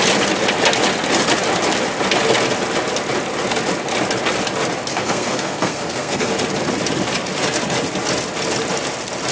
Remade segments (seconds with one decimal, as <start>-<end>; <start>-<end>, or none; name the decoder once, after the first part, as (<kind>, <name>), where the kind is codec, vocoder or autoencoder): 4.9-6.3 (codec, SNAC)